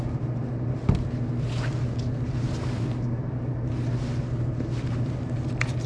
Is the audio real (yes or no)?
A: yes